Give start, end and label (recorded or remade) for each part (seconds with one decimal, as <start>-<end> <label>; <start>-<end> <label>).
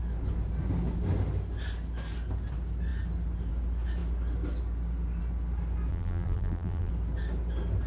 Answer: 0.0-5.9 recorded; 5.9-6.9 remade; 6.9-7.9 recorded